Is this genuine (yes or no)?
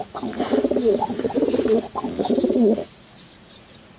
no